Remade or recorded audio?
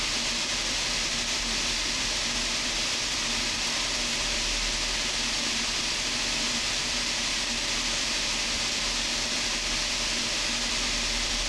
remade